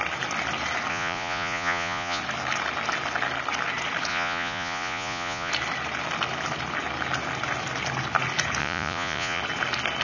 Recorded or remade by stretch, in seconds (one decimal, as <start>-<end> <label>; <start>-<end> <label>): 0.0-0.9 recorded; 0.9-2.2 remade; 2.2-4.1 recorded; 4.1-5.5 remade; 5.5-8.6 recorded; 8.6-9.4 remade; 9.4-10.0 recorded